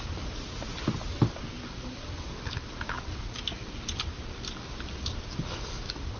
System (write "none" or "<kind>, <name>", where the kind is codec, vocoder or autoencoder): none